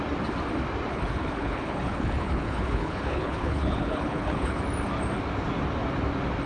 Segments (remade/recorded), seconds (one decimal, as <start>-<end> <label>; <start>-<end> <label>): 0.0-0.9 recorded; 0.9-4.6 remade; 4.6-6.5 recorded